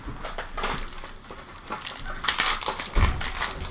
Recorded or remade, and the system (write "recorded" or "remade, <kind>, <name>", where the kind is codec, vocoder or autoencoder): recorded